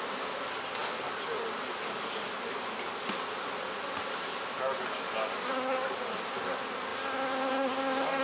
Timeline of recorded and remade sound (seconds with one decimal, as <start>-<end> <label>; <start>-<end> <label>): 0.0-8.2 recorded